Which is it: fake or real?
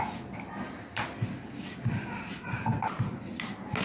real